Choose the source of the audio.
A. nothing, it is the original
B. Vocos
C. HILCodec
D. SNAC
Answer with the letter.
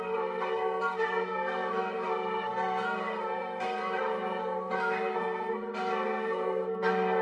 D